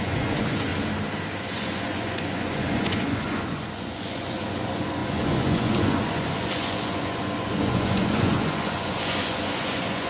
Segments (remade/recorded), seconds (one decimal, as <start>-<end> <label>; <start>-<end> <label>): 0.0-0.7 remade; 0.7-1.4 recorded; 1.4-10.1 remade